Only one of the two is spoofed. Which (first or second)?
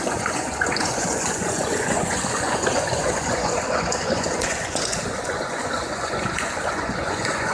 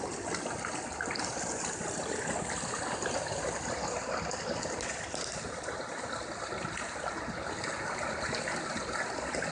first